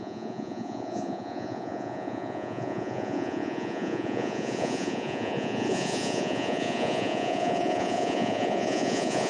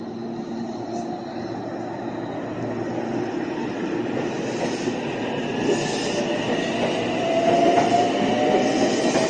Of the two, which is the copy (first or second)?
first